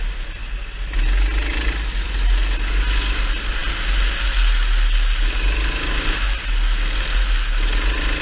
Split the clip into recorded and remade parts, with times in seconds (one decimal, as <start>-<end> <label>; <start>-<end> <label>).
0.0-8.2 recorded